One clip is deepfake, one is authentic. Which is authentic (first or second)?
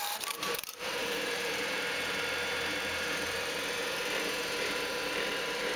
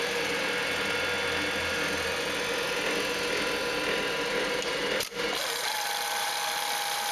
second